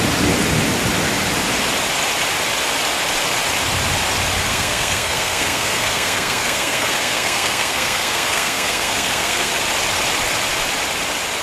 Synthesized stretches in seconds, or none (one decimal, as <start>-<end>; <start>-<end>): 4.5-9.5